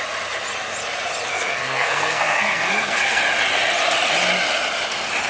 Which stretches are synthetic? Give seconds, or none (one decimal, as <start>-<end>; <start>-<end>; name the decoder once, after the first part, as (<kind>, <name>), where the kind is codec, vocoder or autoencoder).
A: 1.3-3.2 (codec, SNAC)